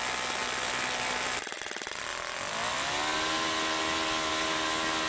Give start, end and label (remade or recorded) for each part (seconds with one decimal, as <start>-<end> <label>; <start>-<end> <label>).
0.0-5.1 recorded